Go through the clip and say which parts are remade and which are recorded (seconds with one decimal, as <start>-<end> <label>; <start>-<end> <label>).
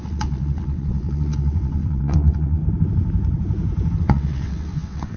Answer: 0.0-2.6 remade; 2.6-4.0 recorded; 4.0-5.2 remade